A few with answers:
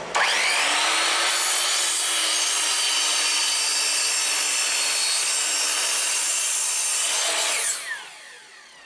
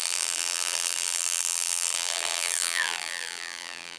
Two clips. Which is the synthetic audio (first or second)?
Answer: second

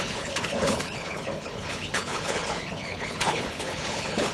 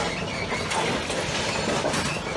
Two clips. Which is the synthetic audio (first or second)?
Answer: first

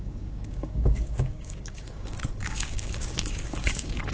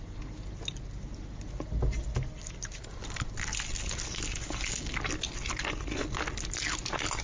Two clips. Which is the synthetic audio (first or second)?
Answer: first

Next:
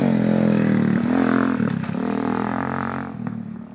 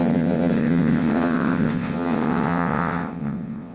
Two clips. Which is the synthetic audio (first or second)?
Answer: second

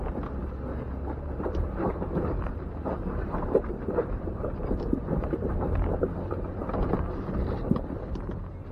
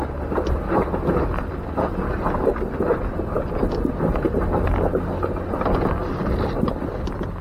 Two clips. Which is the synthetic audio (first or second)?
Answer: first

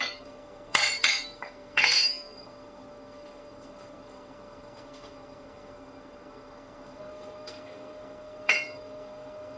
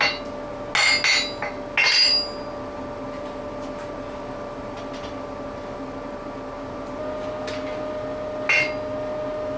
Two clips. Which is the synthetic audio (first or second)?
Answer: first